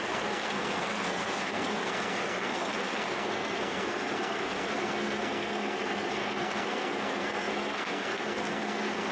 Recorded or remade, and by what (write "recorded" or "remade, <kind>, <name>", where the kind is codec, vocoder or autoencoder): remade, codec, SNAC